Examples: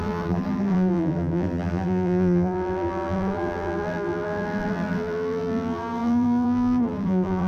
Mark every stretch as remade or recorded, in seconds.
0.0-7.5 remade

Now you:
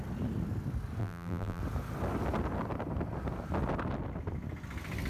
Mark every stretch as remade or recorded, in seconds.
0.0-1.0 recorded; 1.0-1.6 remade; 1.6-5.1 recorded

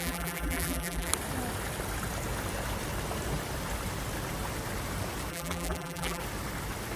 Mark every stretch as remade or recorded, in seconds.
0.0-1.1 remade; 1.1-5.3 recorded; 5.3-6.2 remade; 6.2-7.0 recorded

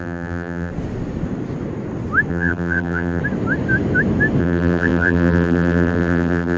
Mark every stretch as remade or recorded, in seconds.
0.0-0.7 remade; 0.7-2.3 recorded; 2.3-3.2 remade; 3.2-4.4 recorded; 4.4-6.6 remade

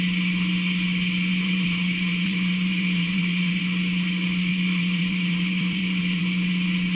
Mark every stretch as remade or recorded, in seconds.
0.0-1.3 recorded; 1.3-3.6 remade; 3.6-4.5 recorded; 4.5-6.2 remade; 6.2-6.9 recorded